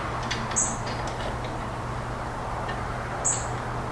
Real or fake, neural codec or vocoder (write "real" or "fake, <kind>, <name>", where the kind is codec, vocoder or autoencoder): real